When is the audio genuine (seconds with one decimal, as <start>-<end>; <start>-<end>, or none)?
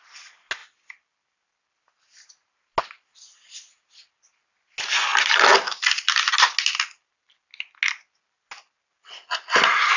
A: 0.0-10.0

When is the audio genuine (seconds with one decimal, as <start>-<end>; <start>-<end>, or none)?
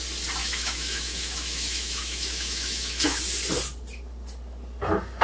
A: 0.0-0.4; 3.2-5.2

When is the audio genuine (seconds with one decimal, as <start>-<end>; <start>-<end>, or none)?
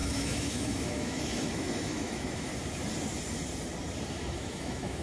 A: 2.5-4.1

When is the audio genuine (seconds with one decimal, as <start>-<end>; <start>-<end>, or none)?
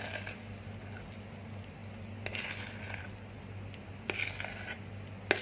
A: 0.0-5.4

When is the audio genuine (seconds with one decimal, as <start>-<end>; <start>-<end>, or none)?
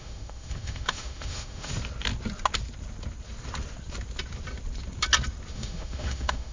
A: 1.7-5.5